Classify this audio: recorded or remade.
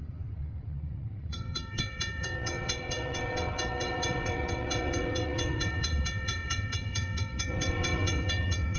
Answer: remade